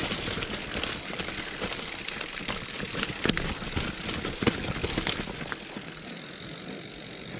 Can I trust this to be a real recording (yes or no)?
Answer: yes